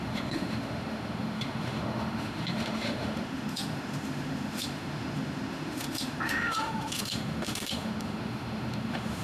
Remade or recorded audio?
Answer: remade